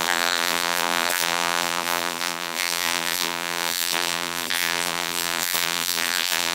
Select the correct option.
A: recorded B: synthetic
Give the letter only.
B